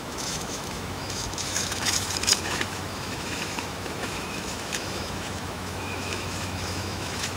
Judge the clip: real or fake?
fake